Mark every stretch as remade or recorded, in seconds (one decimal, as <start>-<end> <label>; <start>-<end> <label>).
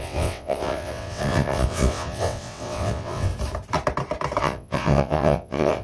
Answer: 0.0-3.3 remade; 3.3-4.4 recorded; 4.4-5.8 remade